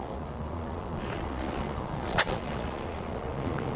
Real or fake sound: fake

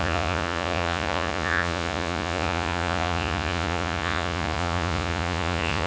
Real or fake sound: fake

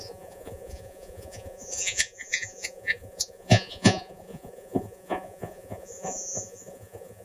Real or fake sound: fake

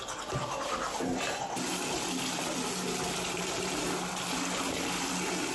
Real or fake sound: real